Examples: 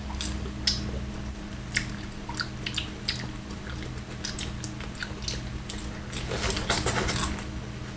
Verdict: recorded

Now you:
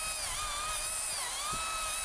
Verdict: recorded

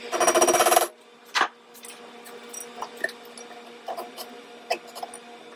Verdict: recorded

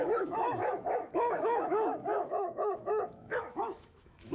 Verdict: remade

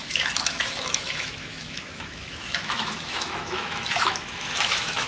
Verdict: remade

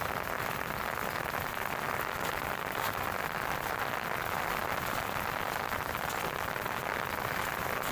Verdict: recorded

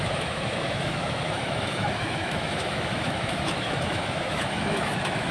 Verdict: remade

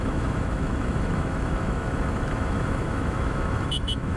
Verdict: remade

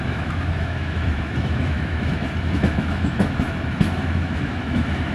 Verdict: remade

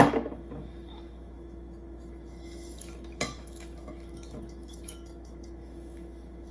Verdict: remade